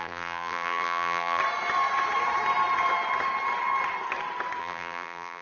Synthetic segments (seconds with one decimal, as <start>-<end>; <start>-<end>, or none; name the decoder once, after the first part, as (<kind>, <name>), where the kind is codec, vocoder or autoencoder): 0.0-1.4 (vocoder, BigVGAN v2); 4.6-5.4